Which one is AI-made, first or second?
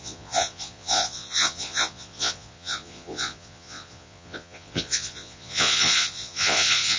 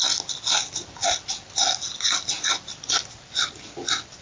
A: first